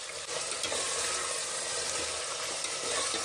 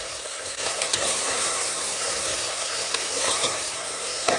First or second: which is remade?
second